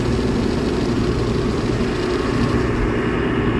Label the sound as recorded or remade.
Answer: recorded